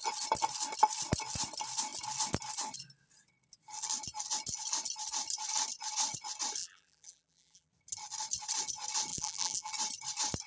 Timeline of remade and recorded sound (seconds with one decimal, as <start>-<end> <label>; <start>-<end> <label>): 0.0-6.6 recorded; 6.6-7.7 remade; 7.7-9.1 recorded; 9.1-9.7 remade; 9.7-10.5 recorded